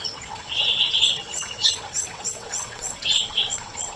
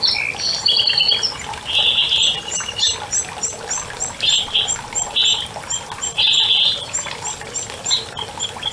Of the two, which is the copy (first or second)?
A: first